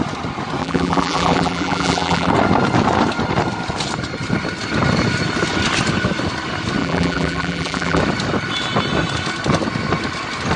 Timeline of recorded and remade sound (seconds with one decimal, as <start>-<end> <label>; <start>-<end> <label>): 0.0-0.6 recorded; 0.6-2.3 remade; 2.3-6.8 recorded; 6.8-8.0 remade; 8.0-10.6 recorded